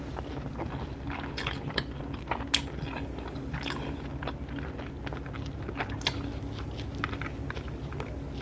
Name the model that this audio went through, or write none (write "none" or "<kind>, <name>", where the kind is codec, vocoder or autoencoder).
none